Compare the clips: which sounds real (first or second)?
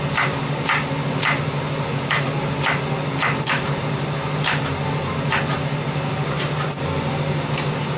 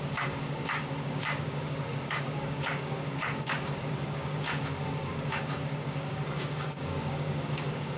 first